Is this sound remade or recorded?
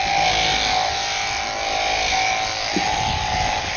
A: recorded